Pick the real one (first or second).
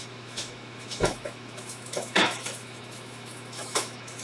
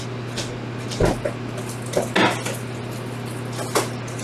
second